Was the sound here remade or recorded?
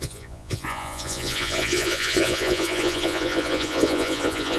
remade